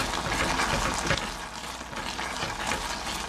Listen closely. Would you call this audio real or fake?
real